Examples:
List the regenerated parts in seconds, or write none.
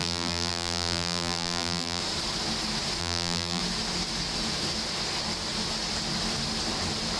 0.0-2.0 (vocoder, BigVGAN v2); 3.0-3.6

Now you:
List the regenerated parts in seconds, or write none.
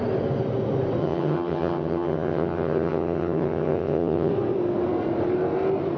1.0-4.3 (vocoder, HiFi-GAN)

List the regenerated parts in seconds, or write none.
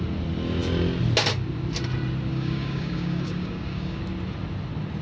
2.3-4.0 (codec, DAC)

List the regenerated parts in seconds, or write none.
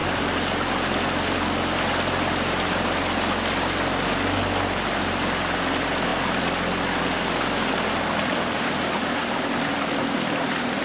none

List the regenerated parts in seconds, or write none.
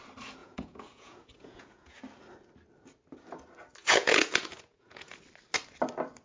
0.4-2.0 (vocoder, Vocos); 3.8-5.2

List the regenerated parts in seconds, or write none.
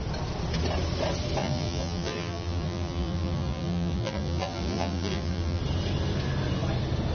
1.4-5.6 (vocoder, BigVGAN v2)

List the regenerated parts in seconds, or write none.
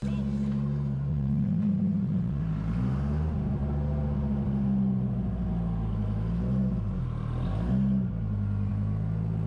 1.1-2.4 (vocoder, WaveNeXt)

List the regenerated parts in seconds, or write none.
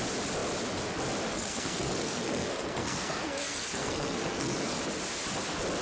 1.3-4.8 (codec, SNAC)